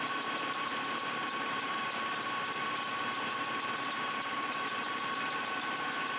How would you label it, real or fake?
fake